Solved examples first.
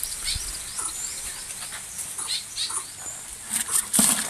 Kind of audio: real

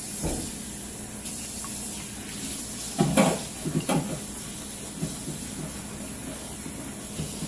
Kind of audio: real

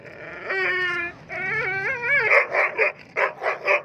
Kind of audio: real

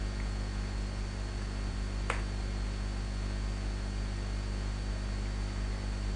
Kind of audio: real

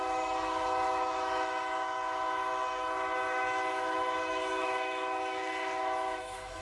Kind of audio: fake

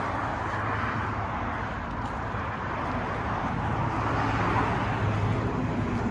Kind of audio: real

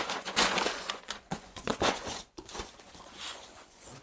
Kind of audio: fake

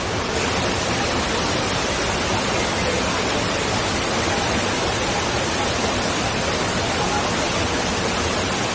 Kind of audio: real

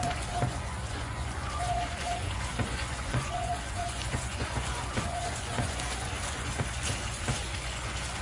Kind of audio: fake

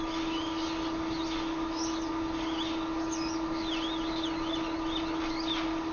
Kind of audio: real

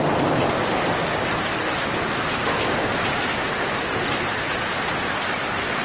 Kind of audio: real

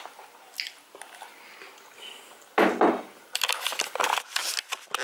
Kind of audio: real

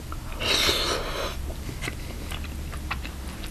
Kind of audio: real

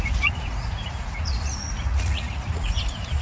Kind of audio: fake